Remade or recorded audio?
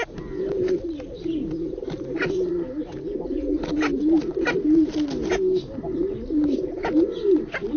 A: recorded